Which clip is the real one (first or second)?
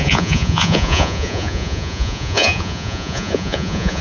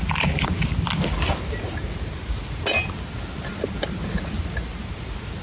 second